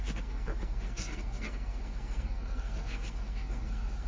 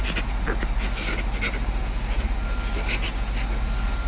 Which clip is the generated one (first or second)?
first